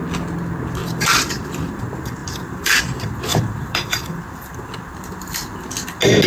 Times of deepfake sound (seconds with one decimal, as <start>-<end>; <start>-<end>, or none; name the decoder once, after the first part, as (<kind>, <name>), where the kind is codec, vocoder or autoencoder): 0.8-1.8 (vocoder, BigVGAN v2); 2.2-2.8; 3.3-3.9